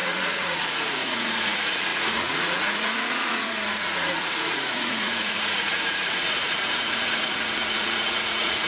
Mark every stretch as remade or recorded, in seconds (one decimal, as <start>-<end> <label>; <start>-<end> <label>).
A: 0.0-8.7 remade